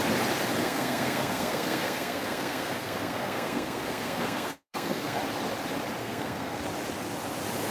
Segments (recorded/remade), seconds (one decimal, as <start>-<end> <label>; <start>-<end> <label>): 0.0-0.6 recorded; 0.6-5.2 remade; 5.2-6.0 recorded; 6.0-6.6 remade; 6.6-7.7 recorded